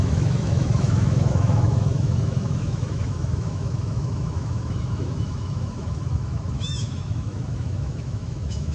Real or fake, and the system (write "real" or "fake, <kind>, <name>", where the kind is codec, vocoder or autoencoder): fake, autoencoder, DAC-VAE